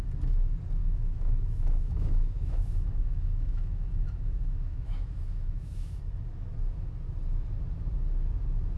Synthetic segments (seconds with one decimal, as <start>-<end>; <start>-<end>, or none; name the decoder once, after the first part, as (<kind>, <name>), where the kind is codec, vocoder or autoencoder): 0.8-6.0 (autoencoder, DAC-VAE)

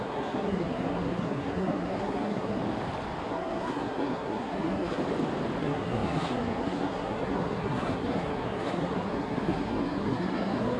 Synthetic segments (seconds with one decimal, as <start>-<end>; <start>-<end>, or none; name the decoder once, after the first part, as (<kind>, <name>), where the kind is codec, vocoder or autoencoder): 0.0-2.6 (codec, SNAC); 3.3-5.0; 5.6-10.8

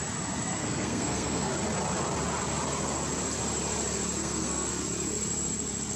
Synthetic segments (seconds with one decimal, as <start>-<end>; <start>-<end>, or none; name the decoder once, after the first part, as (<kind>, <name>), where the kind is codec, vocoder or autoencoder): 0.6-1.5 (codec, SNAC); 4.2-4.7

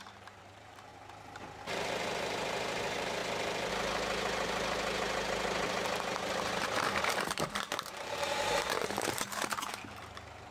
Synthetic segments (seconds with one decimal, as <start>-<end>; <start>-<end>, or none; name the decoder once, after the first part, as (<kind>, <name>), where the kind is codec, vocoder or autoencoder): 0.0-0.9 (vocoder, BigVGAN v2); 1.6-3.2; 7.2-10.5